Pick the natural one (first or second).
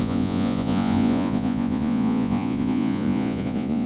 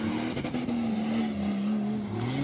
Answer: second